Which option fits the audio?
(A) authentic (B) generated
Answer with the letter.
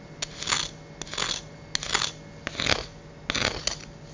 A